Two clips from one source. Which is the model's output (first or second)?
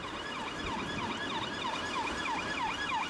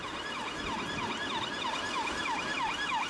first